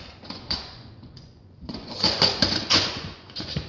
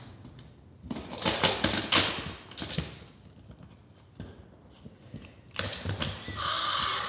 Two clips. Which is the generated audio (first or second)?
first